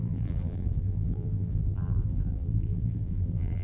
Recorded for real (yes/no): no